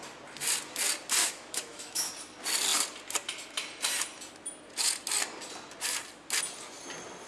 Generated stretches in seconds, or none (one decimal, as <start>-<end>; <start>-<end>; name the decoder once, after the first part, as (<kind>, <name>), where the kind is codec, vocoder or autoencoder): 1.2-2.1 (autoencoder, DAC-VAE)

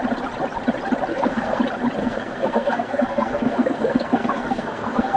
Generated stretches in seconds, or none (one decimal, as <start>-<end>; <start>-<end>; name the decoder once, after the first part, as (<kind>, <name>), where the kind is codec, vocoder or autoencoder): 1.1-1.6 (codec, SNAC); 2.0-5.2

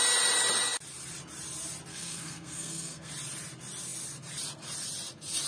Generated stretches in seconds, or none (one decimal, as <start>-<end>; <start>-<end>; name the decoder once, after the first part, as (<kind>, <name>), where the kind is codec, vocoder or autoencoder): 1.9-3.1 (codec, SNAC)

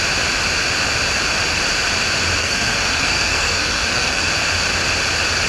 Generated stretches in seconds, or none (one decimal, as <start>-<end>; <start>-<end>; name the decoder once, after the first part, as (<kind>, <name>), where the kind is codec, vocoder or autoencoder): 2.4-4.3 (codec, SNAC)

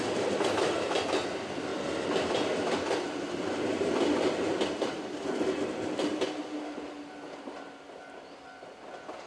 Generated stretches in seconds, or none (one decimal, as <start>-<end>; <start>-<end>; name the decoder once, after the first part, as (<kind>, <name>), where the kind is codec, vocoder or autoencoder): 1.7-5.2 (vocoder, BigVGAN v2)

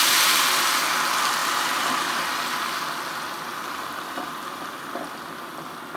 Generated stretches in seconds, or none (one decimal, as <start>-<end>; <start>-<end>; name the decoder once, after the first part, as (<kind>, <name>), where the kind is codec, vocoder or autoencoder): 1.4-1.9 (vocoder, BigVGAN v2); 3.5-5.0